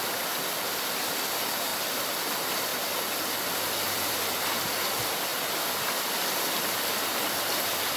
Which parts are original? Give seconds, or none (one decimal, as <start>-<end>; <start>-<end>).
1.7-2.3; 5.3-6.0